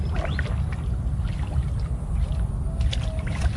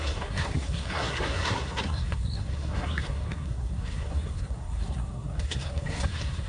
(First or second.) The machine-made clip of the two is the second